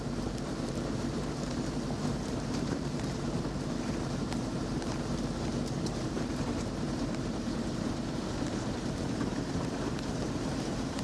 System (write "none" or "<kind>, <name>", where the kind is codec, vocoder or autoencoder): vocoder, BigVGAN v2